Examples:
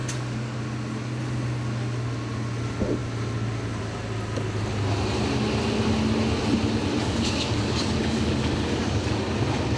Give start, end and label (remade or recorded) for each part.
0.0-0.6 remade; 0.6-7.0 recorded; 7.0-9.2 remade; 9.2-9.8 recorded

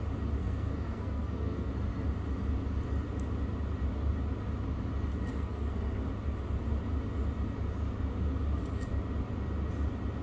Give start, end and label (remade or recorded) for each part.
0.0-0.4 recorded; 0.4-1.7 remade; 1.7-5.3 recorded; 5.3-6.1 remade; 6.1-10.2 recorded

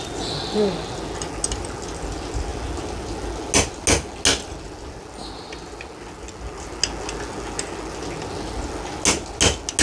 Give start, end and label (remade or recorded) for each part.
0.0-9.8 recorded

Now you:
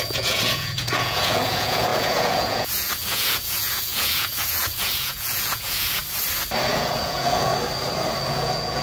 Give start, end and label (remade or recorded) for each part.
0.0-6.0 remade; 6.0-6.7 recorded; 6.7-7.5 remade; 7.5-8.3 recorded; 8.3-8.8 remade